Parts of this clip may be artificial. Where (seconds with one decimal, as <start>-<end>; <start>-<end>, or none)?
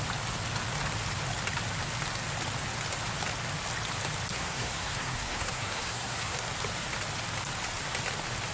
4.3-6.4